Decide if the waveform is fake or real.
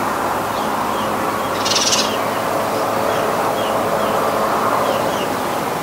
real